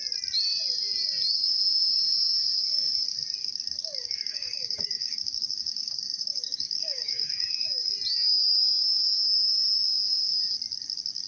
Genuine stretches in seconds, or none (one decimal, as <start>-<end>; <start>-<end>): 0.0-3.4; 7.9-11.3